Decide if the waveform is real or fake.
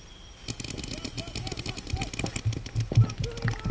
real